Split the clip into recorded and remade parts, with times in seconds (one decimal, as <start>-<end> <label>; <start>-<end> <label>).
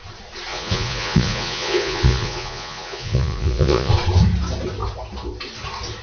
0.0-0.5 recorded; 0.5-3.9 remade; 3.9-6.0 recorded